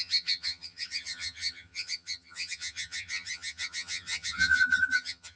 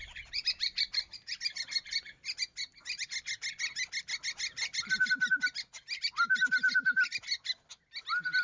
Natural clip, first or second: second